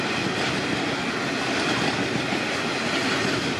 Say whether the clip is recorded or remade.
recorded